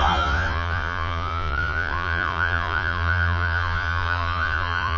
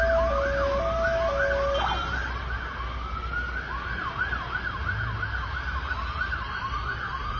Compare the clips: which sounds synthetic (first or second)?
first